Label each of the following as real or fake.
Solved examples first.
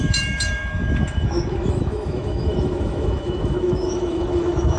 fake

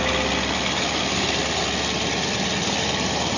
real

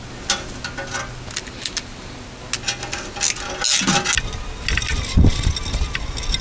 real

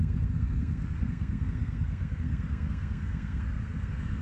fake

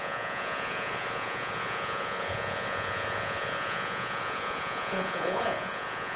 fake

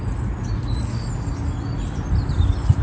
real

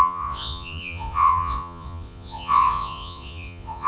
fake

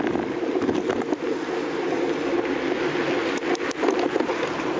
real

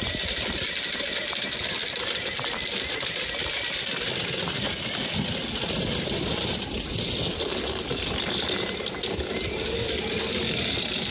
real